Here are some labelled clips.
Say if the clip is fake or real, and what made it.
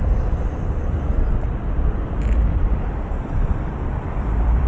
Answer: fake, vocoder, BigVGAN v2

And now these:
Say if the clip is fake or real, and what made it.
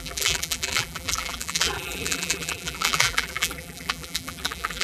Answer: fake, vocoder, BigVGAN v2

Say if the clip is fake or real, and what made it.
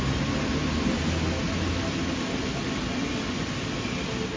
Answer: real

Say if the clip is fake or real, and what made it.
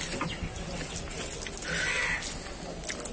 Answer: real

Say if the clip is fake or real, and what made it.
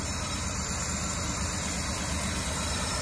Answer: fake, vocoder, BigVGAN v2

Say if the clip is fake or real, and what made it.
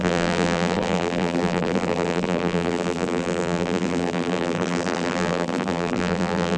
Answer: fake, vocoder, BigVGAN v2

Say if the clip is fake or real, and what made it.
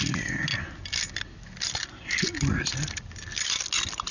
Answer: real